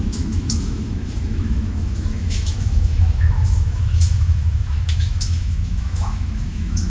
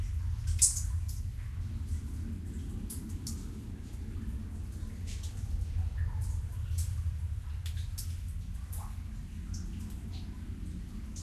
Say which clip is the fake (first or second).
first